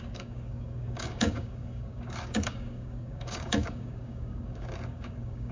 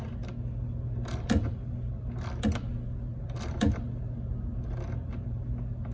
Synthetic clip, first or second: first